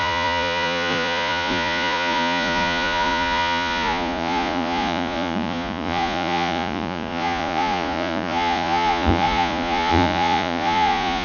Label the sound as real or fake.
fake